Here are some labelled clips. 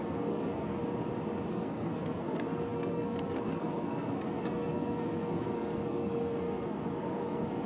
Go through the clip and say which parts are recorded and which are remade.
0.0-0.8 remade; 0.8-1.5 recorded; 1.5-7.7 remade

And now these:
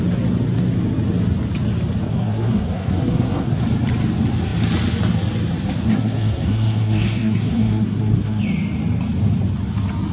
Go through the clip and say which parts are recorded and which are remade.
0.0-2.1 recorded; 2.1-3.6 remade; 3.6-5.9 recorded; 5.9-8.4 remade; 8.4-10.1 recorded

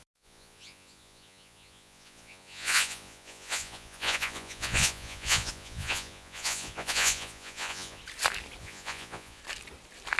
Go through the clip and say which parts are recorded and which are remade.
0.0-8.0 remade; 8.0-8.6 recorded; 8.6-9.4 remade; 9.4-10.2 recorded

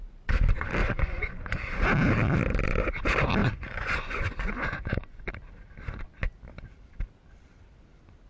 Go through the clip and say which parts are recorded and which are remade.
0.0-0.8 recorded; 0.8-1.6 remade; 1.6-3.4 recorded; 3.4-5.3 remade; 5.3-8.3 recorded